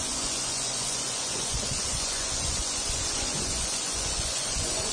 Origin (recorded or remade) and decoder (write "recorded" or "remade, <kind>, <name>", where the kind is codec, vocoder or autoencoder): remade, vocoder, Vocos